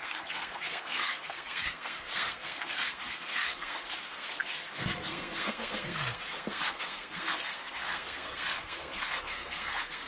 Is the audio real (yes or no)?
no